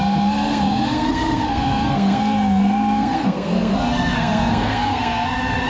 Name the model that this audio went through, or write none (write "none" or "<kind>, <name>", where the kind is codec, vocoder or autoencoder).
codec, SNAC